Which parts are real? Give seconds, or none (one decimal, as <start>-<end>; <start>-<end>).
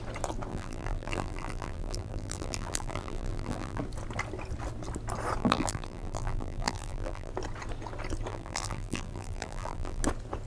0.0-0.5; 3.8-5.4; 7.3-8.3; 10.0-10.5